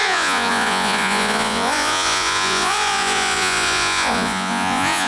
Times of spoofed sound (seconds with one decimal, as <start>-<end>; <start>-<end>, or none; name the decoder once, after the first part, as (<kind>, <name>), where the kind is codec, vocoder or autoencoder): 0.0-5.1 (vocoder, Vocos)